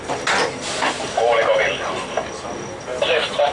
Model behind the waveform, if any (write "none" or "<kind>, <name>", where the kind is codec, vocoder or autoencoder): none